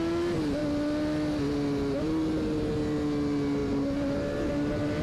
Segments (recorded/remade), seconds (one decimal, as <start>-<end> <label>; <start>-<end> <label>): 0.0-5.0 recorded